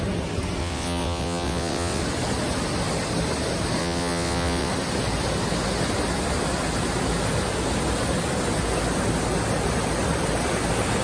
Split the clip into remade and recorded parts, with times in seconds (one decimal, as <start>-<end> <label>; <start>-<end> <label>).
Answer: 0.0-0.6 recorded; 0.6-2.0 remade; 2.0-3.8 recorded; 3.8-4.7 remade; 4.7-11.0 recorded

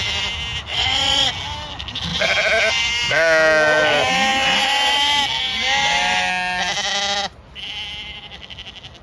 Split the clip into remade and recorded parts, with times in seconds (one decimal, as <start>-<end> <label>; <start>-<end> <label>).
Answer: 0.0-0.7 recorded; 0.7-1.3 remade; 1.3-9.0 recorded